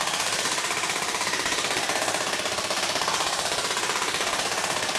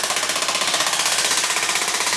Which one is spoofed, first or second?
first